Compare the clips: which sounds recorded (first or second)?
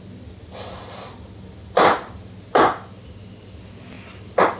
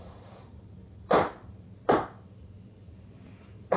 first